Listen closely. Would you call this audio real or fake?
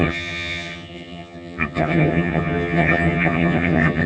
fake